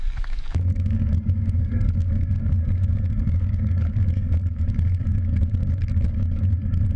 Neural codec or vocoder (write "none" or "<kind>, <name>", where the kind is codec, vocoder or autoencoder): codec, DAC